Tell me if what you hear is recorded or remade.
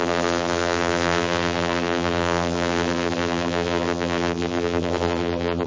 remade